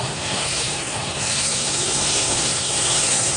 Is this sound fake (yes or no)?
yes